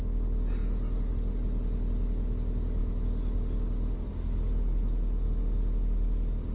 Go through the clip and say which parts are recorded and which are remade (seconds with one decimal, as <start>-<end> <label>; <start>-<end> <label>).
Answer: 0.0-6.5 recorded